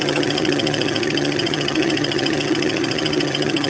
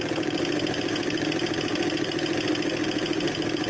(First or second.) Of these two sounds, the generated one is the first